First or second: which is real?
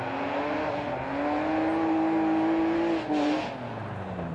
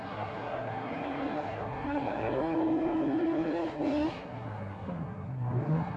first